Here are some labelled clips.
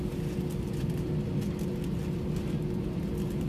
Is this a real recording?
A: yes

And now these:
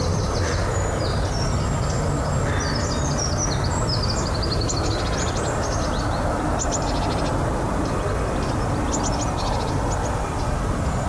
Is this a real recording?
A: yes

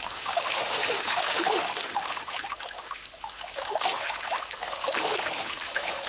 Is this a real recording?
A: no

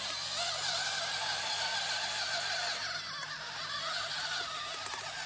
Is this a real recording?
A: yes